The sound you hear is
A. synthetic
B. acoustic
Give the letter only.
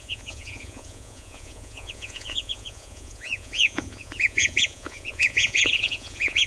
A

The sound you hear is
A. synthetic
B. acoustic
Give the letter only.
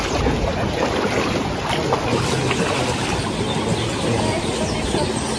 B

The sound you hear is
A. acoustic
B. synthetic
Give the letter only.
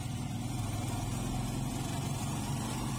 A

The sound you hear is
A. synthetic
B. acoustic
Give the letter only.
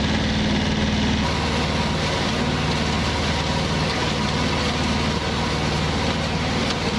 B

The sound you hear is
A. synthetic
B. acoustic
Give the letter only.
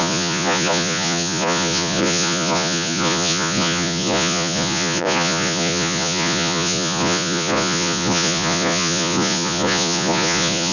A